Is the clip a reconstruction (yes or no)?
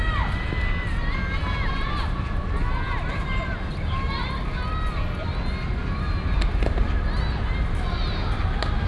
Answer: no